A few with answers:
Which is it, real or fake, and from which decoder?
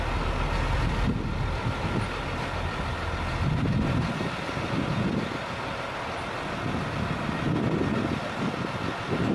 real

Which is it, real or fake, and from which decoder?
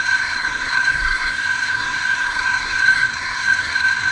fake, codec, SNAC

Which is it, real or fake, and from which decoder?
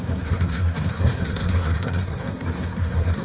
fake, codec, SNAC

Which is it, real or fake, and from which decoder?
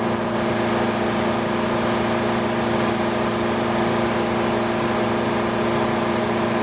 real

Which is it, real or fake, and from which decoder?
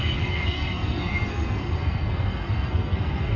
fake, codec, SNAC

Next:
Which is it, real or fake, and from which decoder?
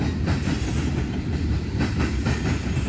real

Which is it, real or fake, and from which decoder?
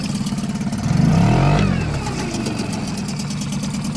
real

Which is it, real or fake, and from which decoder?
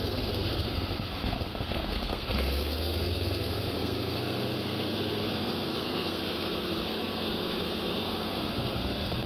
fake, codec, SNAC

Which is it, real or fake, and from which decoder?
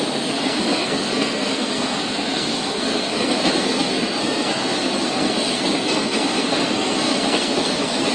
fake, codec, SNAC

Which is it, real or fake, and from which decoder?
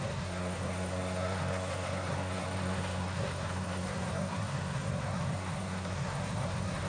fake, codec, SNAC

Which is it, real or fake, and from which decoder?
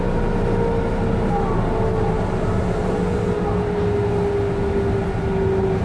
real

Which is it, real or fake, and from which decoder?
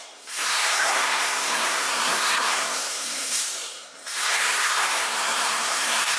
fake, codec, SNAC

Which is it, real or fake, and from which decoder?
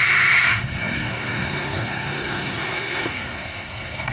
fake, codec, SNAC